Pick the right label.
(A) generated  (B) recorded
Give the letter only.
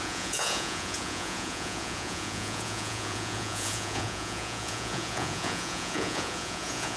A